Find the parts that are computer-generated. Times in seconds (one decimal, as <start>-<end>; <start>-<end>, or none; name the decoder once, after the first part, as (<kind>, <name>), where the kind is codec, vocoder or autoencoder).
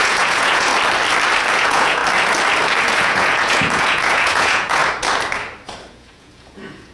0.0-0.7 (vocoder, Vocos); 1.5-2.0; 2.9-4.8; 5.9-6.9